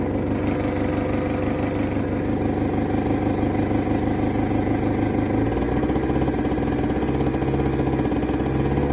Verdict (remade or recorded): recorded